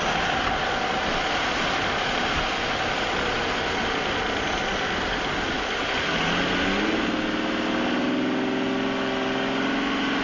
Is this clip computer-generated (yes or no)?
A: no